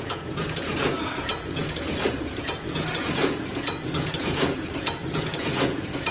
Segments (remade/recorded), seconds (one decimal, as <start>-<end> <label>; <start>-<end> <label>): 0.0-6.1 remade